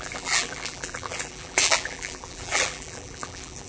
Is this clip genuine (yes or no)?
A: no